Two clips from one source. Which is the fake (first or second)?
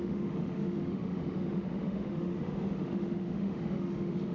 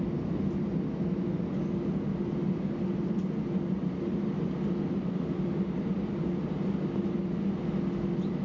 first